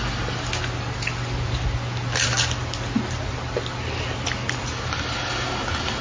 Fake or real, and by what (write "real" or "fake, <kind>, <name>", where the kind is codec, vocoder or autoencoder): real